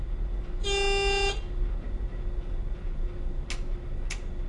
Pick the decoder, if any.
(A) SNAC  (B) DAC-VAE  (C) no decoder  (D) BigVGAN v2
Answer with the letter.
C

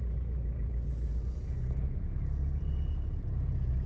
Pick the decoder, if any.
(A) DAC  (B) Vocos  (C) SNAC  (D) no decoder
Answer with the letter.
B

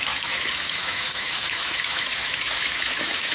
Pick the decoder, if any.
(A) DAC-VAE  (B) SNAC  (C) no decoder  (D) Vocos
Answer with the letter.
A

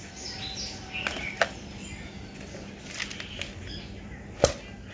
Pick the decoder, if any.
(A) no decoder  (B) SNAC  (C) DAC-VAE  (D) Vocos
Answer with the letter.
A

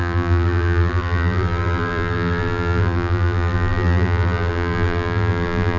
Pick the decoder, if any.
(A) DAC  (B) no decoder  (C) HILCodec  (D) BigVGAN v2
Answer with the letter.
D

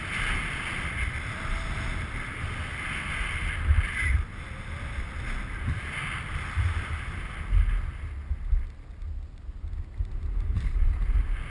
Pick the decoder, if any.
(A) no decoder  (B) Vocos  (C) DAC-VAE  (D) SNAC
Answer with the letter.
A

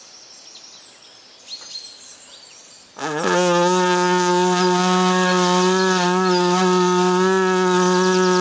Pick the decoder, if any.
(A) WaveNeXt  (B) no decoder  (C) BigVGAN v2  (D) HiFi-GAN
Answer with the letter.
B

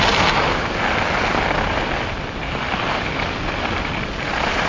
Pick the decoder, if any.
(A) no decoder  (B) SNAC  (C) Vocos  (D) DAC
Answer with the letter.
A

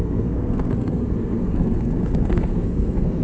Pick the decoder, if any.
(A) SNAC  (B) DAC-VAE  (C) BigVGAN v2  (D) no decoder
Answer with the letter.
A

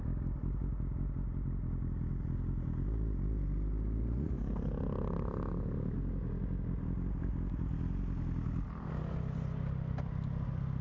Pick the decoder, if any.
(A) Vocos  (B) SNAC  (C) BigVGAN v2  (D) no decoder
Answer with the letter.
D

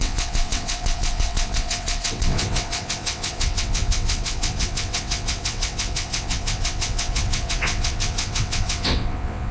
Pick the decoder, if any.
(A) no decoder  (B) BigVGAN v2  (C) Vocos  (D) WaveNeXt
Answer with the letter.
D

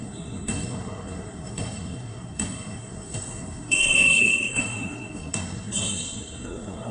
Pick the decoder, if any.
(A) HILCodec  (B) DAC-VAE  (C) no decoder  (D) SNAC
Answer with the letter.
D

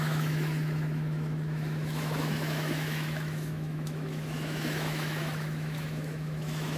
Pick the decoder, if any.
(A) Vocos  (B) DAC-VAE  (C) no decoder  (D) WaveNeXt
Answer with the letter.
B